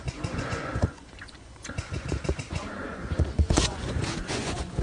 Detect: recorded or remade remade